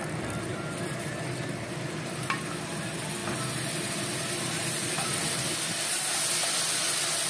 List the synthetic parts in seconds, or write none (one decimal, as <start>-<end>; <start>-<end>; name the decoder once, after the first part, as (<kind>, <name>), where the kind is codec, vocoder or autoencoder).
none